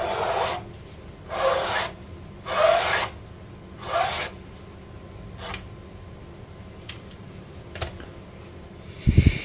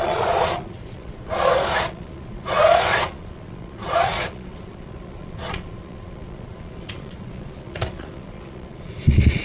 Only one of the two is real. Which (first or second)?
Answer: first